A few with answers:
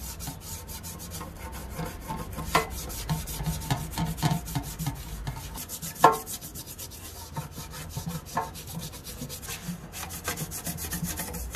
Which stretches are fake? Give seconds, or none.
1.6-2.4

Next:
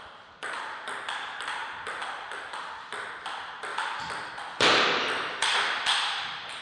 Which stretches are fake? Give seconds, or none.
0.0-5.4; 6.0-6.6